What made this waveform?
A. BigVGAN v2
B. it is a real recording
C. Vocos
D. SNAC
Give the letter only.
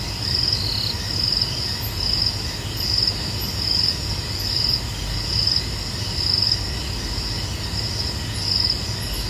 B